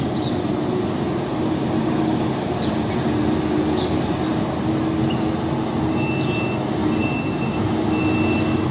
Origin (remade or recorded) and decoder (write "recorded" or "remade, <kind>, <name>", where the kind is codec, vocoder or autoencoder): recorded